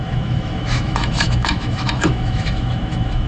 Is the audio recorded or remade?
remade